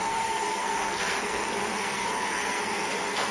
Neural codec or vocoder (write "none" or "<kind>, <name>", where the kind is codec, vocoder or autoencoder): codec, SNAC